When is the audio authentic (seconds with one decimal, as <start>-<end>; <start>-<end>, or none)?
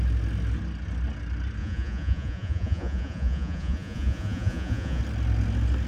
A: 0.0-1.6; 5.0-5.9